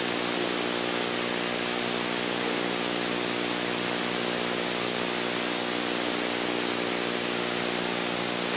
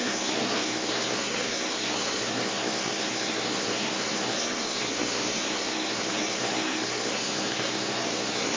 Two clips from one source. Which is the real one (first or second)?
first